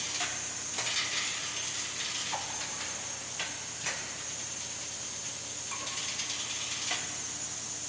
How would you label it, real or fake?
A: real